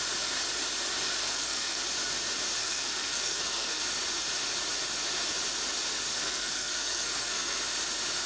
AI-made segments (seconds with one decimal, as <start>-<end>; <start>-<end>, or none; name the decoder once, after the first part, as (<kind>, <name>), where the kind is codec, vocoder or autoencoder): 1.2-1.8 (codec, SNAC); 2.6-3.8; 6.1-7.6